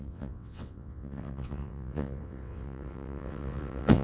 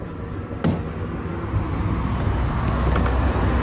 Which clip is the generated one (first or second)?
first